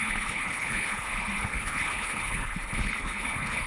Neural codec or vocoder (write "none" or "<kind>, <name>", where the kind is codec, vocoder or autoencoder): codec, HILCodec